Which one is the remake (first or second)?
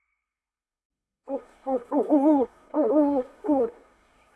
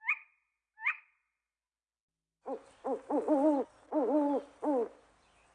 first